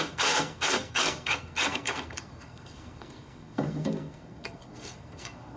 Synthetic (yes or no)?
yes